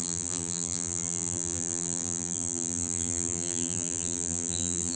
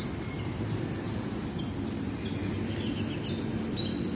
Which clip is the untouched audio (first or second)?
second